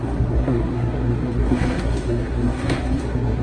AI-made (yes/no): yes